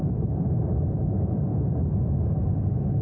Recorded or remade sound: recorded